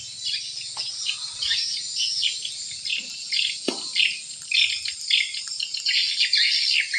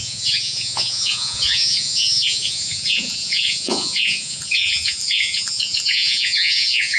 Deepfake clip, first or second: second